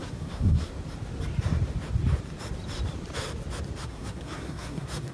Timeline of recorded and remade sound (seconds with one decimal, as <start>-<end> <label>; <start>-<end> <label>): 0.0-0.7 remade; 0.7-3.8 recorded; 3.8-5.1 remade